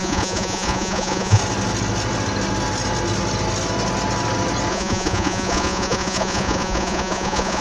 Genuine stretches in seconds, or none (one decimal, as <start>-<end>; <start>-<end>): 1.4-4.7